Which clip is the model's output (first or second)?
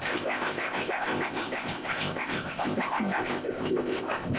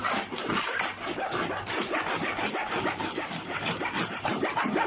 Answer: first